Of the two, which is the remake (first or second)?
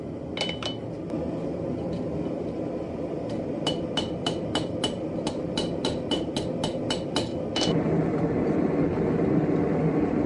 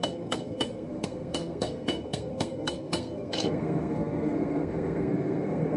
second